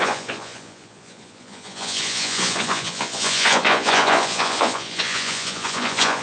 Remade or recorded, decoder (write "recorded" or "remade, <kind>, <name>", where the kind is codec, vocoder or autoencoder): remade, vocoder, Vocos